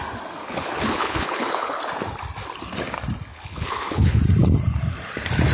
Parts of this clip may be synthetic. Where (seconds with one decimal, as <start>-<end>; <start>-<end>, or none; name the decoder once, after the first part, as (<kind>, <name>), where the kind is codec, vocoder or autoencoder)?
0.4-1.8 (codec, HILCodec); 3.3-4.2